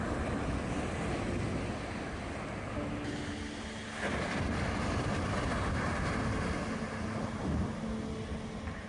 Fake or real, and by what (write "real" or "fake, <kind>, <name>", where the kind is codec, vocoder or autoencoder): real